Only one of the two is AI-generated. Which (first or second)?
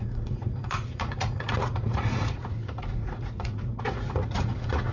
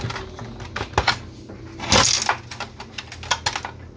first